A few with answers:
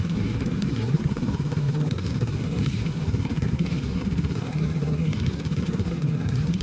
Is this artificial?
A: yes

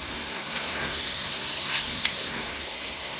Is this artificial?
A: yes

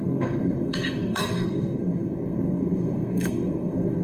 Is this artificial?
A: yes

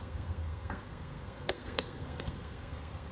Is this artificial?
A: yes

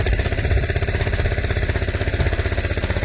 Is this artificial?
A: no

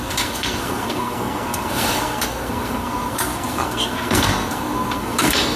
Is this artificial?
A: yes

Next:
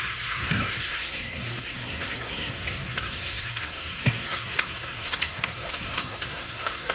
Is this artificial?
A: yes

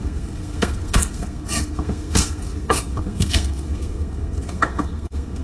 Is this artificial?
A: yes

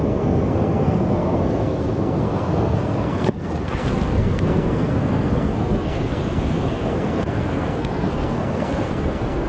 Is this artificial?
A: yes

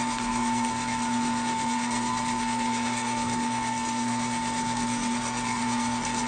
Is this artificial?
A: yes